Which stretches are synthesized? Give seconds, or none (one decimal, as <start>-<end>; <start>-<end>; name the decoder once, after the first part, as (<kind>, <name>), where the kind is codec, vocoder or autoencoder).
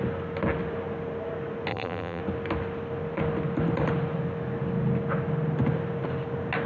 1.7-2.2 (vocoder, BigVGAN v2)